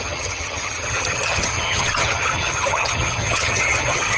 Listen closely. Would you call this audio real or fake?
fake